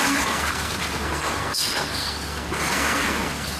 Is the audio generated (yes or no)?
yes